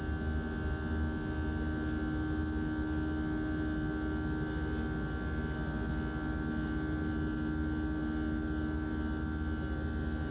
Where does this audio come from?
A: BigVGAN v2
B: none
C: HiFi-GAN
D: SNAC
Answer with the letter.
B